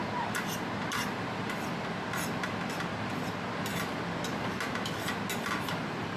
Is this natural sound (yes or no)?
yes